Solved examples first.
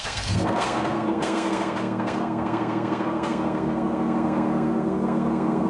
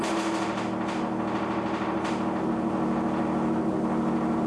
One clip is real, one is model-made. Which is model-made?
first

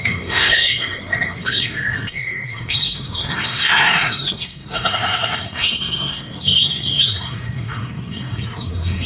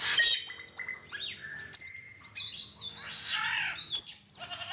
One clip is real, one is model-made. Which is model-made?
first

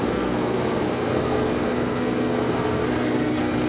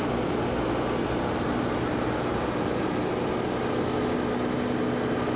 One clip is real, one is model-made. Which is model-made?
first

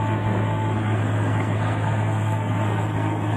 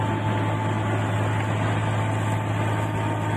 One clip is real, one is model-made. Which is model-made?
first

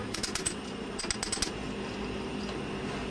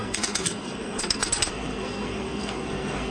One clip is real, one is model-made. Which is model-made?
second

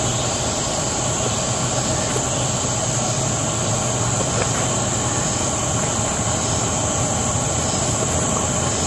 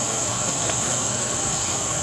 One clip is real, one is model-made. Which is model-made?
second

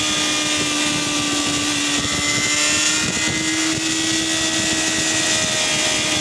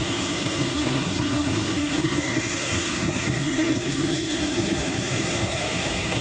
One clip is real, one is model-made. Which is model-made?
second